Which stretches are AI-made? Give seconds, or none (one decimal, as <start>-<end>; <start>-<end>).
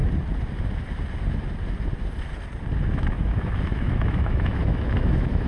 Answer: 2.8-5.5